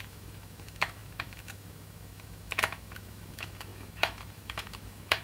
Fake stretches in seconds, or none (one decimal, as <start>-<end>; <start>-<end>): 0.0-5.2